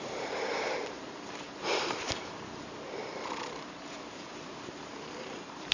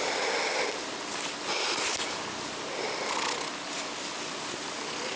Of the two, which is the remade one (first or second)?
first